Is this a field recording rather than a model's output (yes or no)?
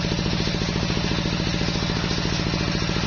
yes